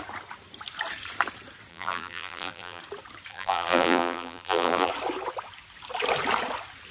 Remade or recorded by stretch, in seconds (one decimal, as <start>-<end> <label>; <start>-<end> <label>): 0.0-1.7 recorded; 1.7-2.8 remade; 2.8-3.3 recorded; 3.3-4.9 remade; 4.9-6.9 recorded